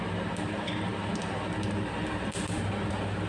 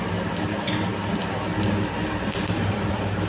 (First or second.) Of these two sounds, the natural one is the first